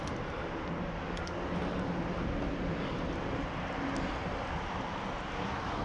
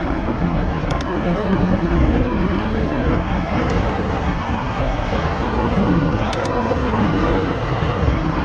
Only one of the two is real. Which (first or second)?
first